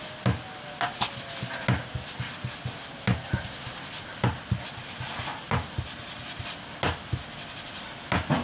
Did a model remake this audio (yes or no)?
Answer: no